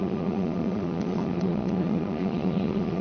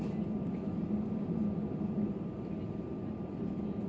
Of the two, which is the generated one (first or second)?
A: first